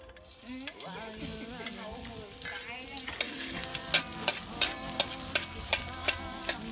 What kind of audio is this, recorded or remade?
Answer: recorded